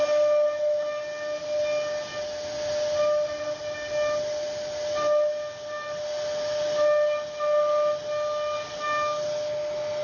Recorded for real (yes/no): yes